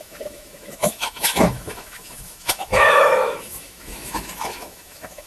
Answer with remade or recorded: remade